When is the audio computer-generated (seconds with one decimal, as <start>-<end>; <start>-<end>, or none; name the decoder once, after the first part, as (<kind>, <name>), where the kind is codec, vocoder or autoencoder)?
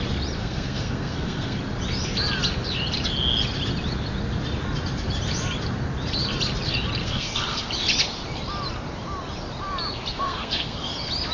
0.4-1.6 (codec, SNAC); 7.0-7.7; 10.1-10.9